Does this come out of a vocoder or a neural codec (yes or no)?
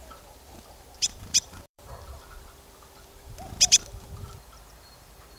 yes